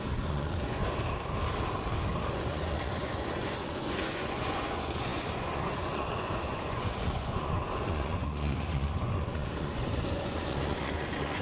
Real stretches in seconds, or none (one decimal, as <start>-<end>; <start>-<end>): 0.8-2.3